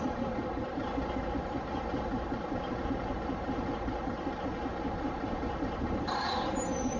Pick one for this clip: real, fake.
fake